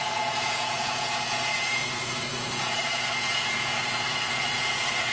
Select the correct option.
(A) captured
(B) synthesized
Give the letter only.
B